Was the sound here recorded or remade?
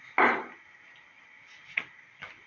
recorded